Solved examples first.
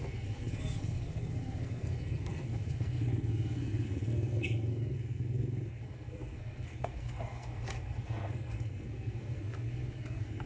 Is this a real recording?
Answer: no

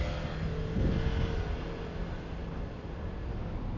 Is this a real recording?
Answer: yes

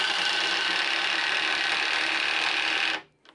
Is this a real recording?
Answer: yes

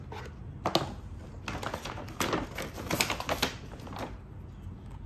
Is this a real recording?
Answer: yes